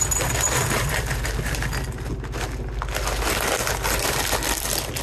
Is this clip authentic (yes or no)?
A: yes